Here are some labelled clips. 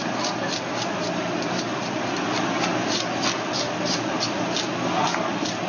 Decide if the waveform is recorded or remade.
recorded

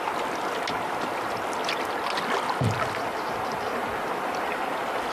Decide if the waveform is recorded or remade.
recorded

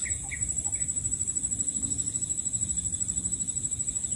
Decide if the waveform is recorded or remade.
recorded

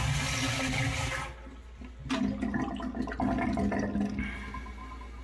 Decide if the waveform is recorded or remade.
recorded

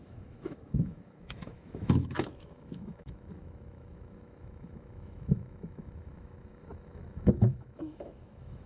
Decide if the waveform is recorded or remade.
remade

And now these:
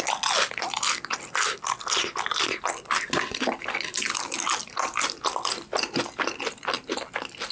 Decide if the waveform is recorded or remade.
recorded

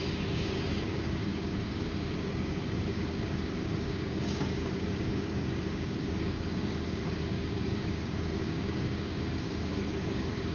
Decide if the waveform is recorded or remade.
remade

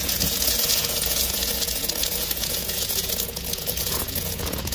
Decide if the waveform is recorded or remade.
remade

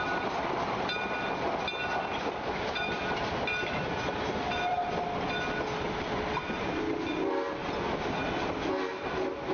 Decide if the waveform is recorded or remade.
recorded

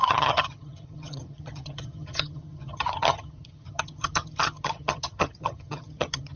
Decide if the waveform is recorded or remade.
remade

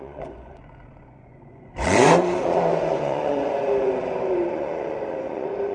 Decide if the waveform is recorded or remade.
remade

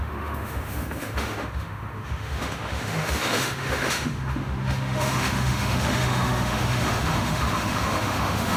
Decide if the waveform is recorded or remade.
remade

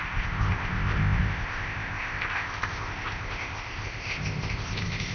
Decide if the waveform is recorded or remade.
remade